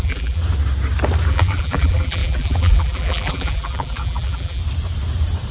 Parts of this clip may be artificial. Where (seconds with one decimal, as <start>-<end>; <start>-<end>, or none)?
0.0-0.4; 1.3-4.6